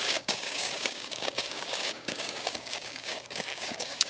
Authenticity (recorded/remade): remade